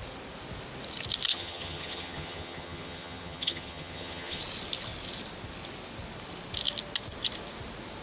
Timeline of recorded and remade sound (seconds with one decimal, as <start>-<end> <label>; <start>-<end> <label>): 0.0-1.3 recorded; 1.3-4.4 remade; 4.4-8.0 recorded